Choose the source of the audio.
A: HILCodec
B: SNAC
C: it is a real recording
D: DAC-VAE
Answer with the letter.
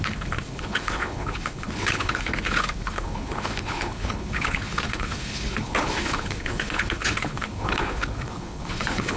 A